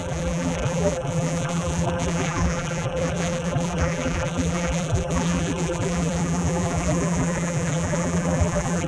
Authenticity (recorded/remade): remade